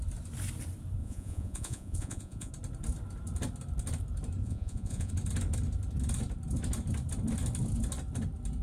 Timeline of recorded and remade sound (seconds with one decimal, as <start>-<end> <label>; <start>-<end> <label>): 0.0-1.0 recorded; 1.0-2.5 remade; 2.5-4.4 recorded; 4.4-5.1 remade; 5.1-8.6 recorded